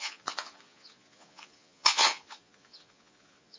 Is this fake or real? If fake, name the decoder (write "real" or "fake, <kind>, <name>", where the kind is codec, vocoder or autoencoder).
fake, vocoder, Vocos